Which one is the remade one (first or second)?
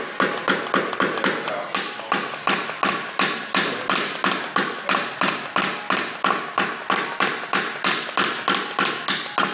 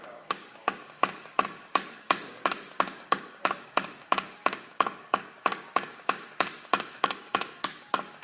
second